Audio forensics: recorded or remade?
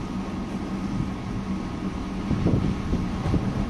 recorded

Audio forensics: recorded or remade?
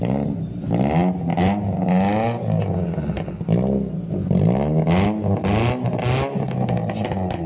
recorded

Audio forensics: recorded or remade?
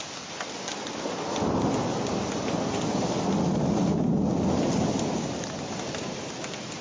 recorded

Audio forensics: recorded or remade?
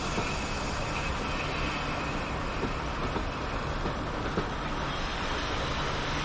recorded